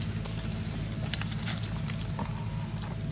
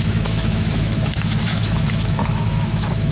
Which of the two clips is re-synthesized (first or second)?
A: second